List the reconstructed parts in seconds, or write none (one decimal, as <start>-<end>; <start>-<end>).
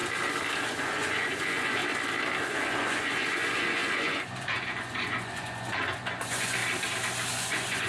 0.6-1.8; 2.4-6.6; 7.3-7.9